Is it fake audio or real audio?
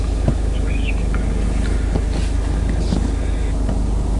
real